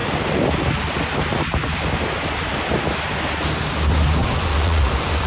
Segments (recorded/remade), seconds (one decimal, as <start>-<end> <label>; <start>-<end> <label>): 0.0-4.2 recorded; 4.2-5.3 remade